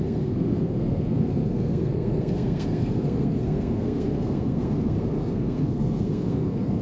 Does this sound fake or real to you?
fake